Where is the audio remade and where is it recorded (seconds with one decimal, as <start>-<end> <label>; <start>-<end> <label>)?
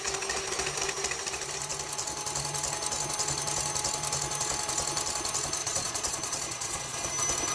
0.0-5.6 recorded; 5.6-7.1 remade; 7.1-7.5 recorded